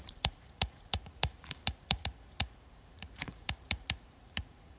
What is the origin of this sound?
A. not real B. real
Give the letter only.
A